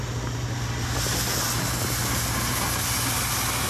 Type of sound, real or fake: real